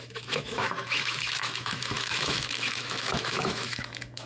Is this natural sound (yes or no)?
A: no